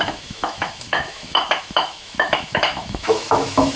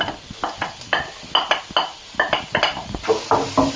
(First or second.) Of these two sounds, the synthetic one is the first